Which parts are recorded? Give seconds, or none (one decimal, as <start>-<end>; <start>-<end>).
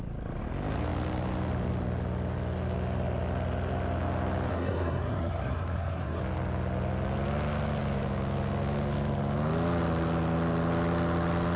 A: 0.0-4.5; 6.2-11.6